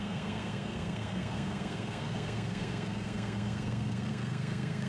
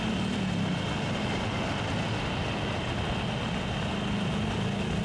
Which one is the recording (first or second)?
second